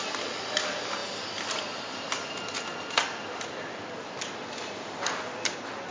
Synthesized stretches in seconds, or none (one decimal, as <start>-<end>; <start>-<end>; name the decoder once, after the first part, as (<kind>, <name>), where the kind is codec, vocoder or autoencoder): none